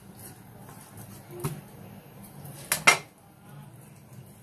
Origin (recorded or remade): recorded